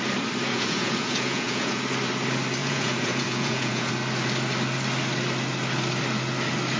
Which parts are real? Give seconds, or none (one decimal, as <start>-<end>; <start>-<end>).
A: 0.0-0.5; 1.8-2.6; 3.9-6.8